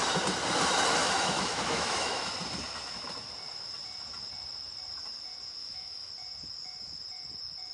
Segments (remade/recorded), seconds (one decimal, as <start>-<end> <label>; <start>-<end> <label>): 0.0-1.0 recorded; 1.0-2.3 remade; 2.3-5.6 recorded; 5.6-6.1 remade; 6.1-7.7 recorded